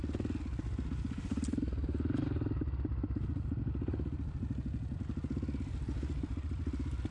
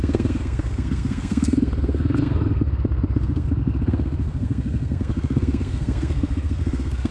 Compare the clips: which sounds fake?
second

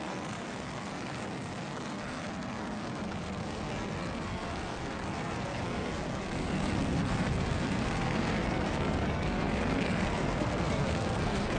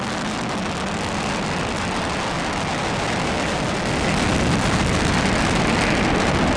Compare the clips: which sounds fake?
first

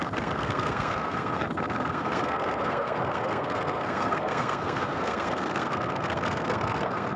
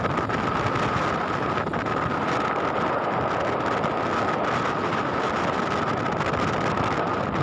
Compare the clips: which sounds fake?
first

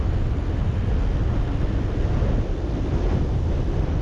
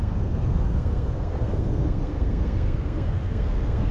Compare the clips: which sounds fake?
second